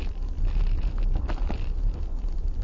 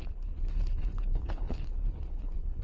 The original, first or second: first